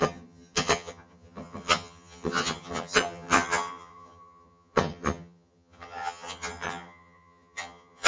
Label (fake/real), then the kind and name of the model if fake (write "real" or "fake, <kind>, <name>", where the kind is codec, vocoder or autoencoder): fake, vocoder, HiFi-GAN